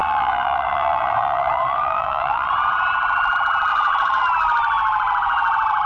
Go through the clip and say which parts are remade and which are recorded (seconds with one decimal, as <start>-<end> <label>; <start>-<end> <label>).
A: 0.0-2.5 remade; 2.5-3.7 recorded; 3.7-4.2 remade; 4.2-5.9 recorded